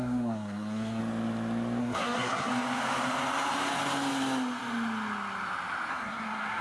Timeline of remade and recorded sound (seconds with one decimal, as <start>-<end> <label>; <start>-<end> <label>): 0.0-1.0 remade; 1.0-1.8 recorded; 1.8-2.5 remade; 2.5-5.9 recorded; 5.9-6.6 remade